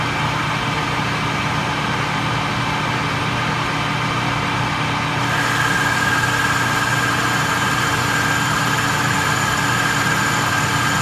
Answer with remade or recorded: recorded